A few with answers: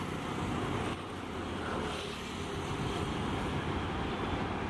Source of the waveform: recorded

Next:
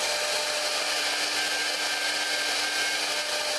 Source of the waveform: recorded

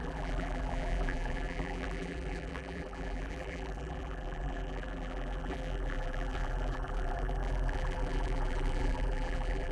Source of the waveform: remade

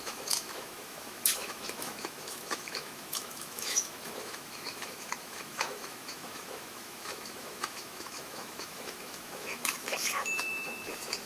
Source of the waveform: remade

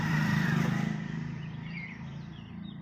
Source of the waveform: remade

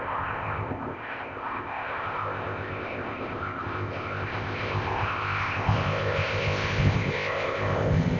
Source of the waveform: remade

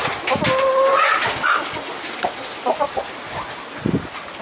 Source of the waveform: recorded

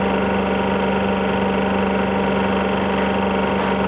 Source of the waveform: recorded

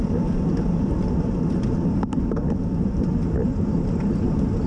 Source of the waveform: remade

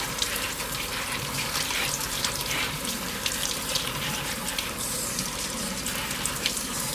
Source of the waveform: remade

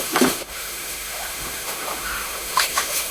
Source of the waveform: remade